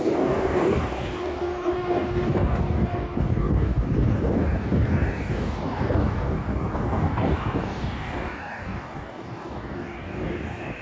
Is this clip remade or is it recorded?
remade